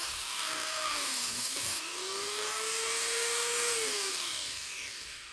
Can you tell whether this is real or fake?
fake